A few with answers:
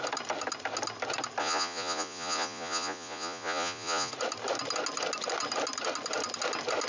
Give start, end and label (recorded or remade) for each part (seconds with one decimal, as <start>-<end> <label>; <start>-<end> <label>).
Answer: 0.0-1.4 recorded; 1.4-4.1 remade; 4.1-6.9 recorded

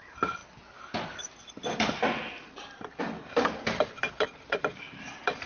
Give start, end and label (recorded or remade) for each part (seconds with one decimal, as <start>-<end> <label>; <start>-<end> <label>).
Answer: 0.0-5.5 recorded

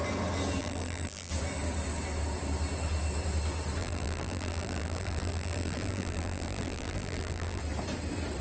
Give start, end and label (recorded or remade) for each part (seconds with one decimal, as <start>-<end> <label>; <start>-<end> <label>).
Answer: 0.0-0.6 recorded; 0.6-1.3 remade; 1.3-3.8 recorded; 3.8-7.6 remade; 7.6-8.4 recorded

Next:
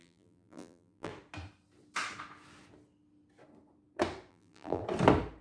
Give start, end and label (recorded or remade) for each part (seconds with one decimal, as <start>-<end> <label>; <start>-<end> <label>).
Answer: 0.0-1.1 remade; 1.1-4.3 recorded; 4.3-4.8 remade; 4.8-5.4 recorded

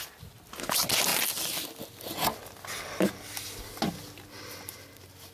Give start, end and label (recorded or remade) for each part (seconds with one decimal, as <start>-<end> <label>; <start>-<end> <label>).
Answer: 0.0-5.3 recorded

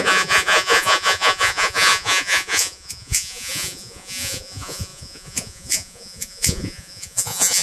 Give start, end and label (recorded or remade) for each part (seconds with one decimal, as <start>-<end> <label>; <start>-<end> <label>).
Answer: 0.0-7.6 remade

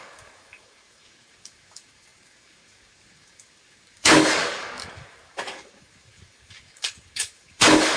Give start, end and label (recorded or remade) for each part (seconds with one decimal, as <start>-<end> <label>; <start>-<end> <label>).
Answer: 0.0-8.0 remade

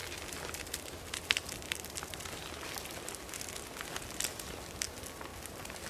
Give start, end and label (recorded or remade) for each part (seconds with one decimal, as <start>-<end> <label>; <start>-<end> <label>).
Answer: 0.0-5.3 recorded; 5.3-5.9 remade